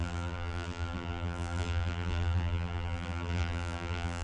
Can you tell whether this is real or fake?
fake